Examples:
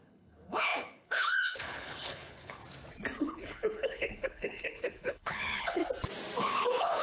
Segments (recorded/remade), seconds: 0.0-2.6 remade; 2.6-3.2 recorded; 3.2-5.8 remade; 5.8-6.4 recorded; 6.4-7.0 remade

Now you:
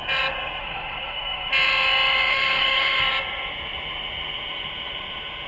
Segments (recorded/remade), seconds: 0.0-0.6 recorded; 0.6-1.5 remade; 1.5-2.3 recorded; 2.3-3.0 remade; 3.0-5.5 recorded